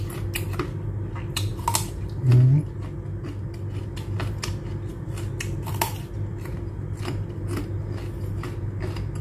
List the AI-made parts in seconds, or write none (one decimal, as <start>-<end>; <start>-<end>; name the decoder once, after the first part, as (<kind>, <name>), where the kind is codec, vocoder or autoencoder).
none